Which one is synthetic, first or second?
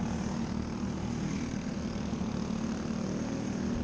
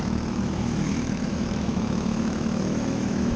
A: second